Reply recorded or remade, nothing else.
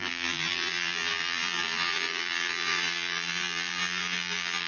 remade